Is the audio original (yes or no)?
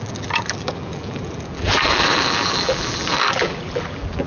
no